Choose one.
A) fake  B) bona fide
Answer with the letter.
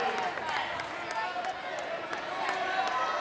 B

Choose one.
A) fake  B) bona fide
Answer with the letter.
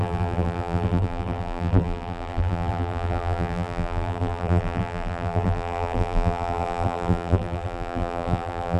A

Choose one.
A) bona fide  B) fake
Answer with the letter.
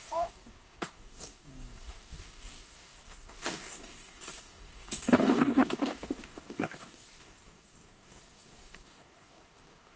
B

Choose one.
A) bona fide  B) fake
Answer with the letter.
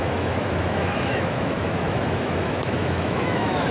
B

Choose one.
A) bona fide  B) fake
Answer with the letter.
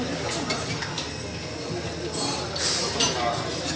A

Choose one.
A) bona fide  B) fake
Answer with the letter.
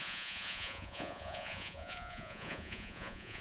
B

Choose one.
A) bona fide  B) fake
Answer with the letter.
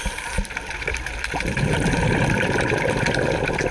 B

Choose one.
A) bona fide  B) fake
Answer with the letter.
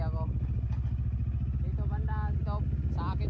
A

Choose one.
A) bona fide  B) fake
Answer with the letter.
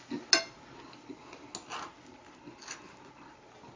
A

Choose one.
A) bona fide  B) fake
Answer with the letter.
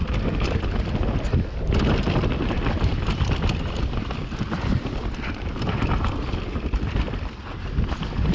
A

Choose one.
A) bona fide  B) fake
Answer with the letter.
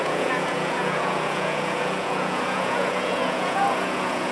B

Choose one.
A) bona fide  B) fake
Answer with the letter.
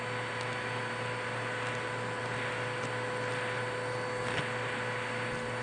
A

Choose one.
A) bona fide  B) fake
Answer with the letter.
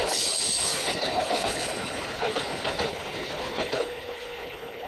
B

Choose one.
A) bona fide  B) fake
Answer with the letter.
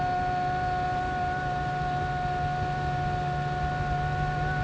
A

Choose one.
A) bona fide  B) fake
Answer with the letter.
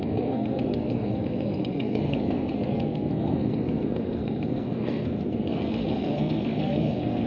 B